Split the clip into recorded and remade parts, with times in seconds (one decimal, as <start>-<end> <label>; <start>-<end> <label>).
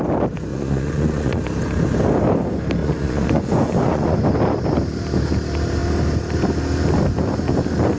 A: 0.0-0.5 recorded; 0.5-1.4 remade; 1.4-2.8 recorded; 2.8-4.2 remade; 4.2-8.0 recorded